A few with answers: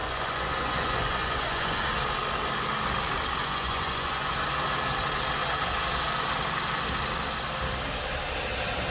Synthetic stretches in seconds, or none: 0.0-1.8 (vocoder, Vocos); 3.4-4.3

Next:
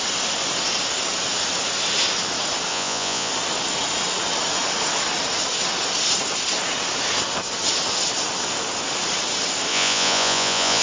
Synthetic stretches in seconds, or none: 2.7-3.3 (vocoder, Vocos); 9.7-10.8

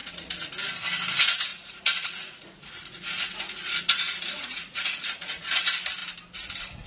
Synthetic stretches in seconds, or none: 0.0-0.5 (vocoder, Vocos); 1.5-5.6

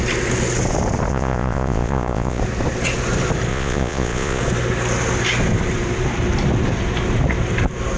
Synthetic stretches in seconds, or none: 1.1-2.4 (vocoder, Vocos); 3.5-4.4